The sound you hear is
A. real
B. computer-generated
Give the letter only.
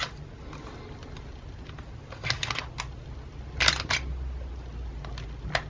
A